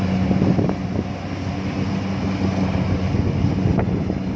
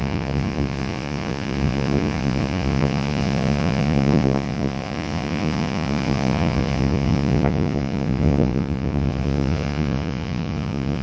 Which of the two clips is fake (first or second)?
second